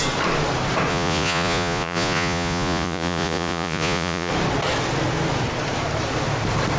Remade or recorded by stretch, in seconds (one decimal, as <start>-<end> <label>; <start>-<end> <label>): 0.0-0.9 recorded; 0.9-4.3 remade; 4.3-6.8 recorded